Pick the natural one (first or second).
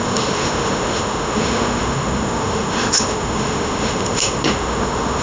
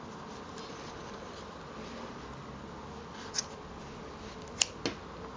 second